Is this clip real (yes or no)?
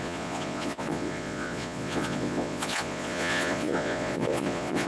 no